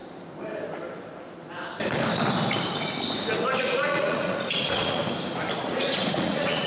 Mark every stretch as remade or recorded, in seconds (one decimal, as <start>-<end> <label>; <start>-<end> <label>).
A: 0.0-3.6 recorded; 3.6-5.0 remade; 5.0-5.6 recorded; 5.6-6.7 remade